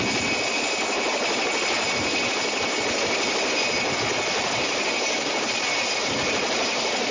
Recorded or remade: recorded